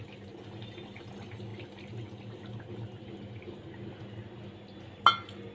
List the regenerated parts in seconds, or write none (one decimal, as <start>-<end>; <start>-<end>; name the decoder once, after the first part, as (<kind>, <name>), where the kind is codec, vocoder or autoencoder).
none